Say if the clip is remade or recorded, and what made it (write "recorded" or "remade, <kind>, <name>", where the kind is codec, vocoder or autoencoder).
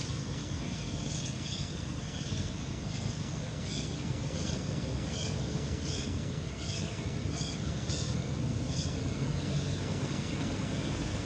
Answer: remade, codec, SNAC